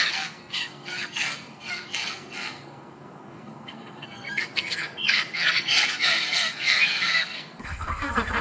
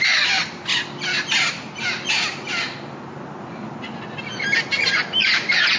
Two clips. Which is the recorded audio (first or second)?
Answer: second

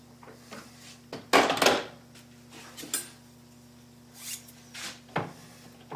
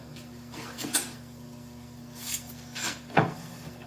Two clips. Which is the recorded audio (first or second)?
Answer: first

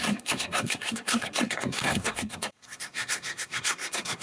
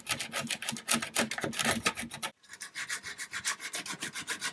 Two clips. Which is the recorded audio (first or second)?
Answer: second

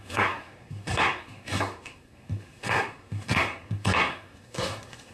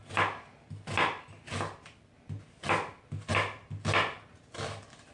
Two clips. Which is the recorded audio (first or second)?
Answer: second